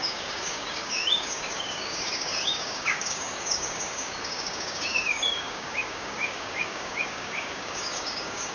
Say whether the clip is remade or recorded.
remade